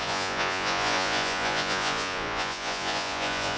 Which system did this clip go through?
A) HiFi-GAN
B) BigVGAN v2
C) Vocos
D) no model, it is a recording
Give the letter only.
C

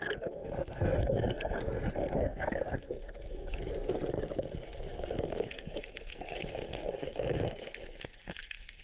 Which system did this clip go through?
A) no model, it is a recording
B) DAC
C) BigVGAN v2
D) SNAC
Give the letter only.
D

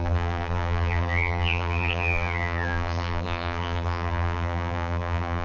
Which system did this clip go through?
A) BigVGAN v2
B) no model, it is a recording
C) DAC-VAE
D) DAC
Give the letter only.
A